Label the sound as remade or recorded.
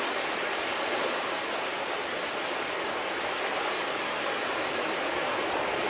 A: recorded